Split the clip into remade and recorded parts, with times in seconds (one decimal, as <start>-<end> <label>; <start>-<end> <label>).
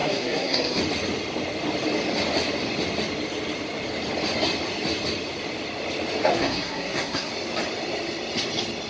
0.0-0.8 remade; 0.8-6.3 recorded; 6.3-7.3 remade; 7.3-8.9 recorded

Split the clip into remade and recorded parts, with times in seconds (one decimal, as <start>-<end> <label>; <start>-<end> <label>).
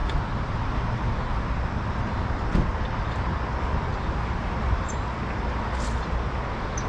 0.0-6.9 recorded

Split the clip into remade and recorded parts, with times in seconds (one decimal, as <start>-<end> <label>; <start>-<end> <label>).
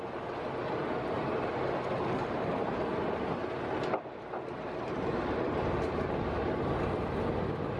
0.0-7.8 recorded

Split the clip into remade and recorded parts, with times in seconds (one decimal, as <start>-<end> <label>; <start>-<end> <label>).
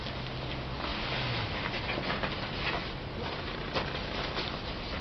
0.0-2.8 recorded; 2.8-3.4 remade; 3.4-5.0 recorded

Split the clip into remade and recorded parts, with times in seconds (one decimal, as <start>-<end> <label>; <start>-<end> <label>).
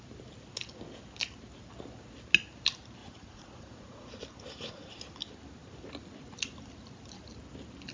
0.0-3.0 recorded; 3.0-4.1 remade; 4.1-7.9 recorded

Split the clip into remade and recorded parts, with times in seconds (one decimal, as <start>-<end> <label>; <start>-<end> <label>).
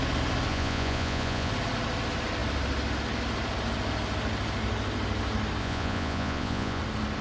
0.0-0.5 recorded; 0.5-1.5 remade; 1.5-5.6 recorded; 5.6-6.8 remade; 6.8-7.2 recorded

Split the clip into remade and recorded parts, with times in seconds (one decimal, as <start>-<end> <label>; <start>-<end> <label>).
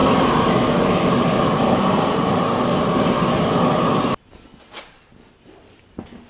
0.0-6.3 recorded